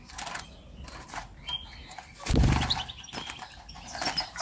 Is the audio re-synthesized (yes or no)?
no